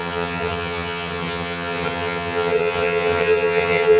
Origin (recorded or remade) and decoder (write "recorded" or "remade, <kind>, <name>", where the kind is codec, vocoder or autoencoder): remade, vocoder, HiFi-GAN